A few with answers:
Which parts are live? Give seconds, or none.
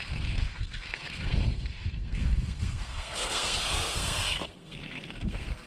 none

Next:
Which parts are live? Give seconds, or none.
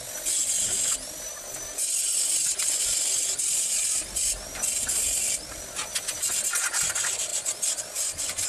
0.0-3.5; 6.2-8.5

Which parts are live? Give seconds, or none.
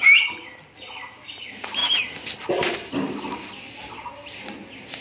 0.0-5.0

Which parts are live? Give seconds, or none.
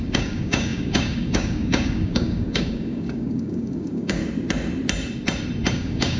4.2-5.7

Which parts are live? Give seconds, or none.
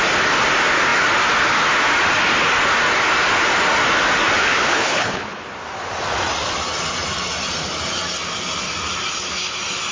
0.0-4.4; 5.4-9.9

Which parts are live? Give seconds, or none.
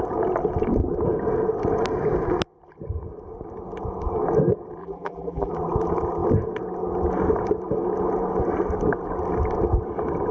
0.0-4.8; 5.5-10.3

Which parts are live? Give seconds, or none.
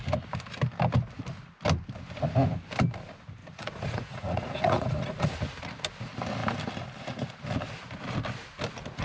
0.0-3.4; 5.3-9.0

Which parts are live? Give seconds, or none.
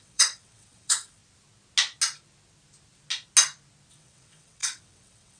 1.2-3.9